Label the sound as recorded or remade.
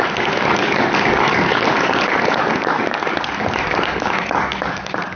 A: remade